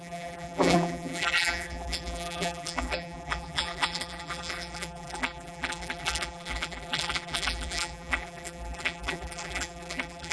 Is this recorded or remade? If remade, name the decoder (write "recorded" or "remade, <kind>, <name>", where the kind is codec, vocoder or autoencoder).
remade, vocoder, BigVGAN v2